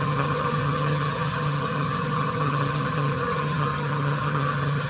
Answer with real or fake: fake